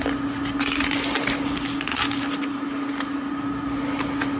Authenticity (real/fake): real